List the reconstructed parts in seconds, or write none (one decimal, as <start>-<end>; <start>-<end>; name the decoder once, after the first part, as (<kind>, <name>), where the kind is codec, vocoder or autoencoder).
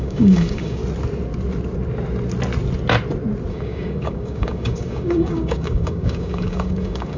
0.0-0.8 (codec, DAC); 3.5-7.2